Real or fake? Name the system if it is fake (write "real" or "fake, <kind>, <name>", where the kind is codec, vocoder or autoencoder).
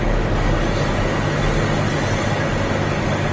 real